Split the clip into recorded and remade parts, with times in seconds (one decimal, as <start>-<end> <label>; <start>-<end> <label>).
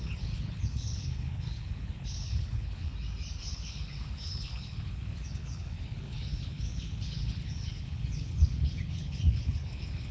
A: 0.0-2.9 remade; 2.9-3.4 recorded; 3.4-10.1 remade